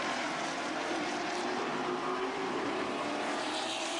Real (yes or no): no